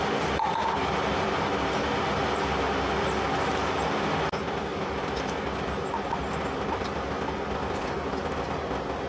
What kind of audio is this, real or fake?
real